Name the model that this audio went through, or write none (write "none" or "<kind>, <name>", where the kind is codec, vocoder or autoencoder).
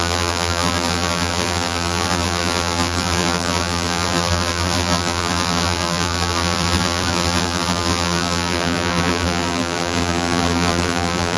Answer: vocoder, BigVGAN v2